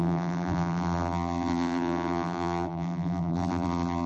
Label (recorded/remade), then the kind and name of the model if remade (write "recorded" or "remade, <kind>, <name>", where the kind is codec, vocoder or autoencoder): remade, vocoder, BigVGAN v2